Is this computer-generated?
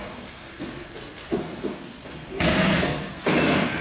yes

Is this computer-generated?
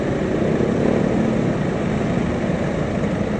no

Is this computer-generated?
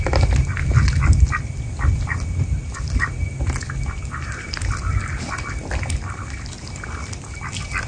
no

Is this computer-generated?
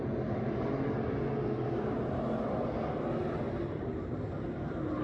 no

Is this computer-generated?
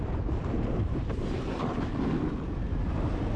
no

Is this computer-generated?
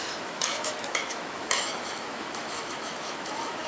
yes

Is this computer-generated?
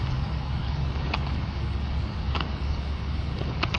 yes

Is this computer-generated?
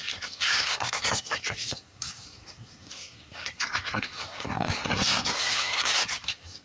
yes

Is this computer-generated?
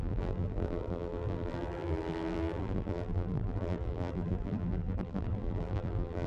yes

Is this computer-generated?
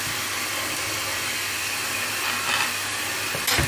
no